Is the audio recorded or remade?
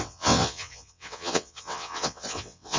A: remade